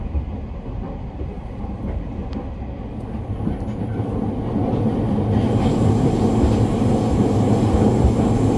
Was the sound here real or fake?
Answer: real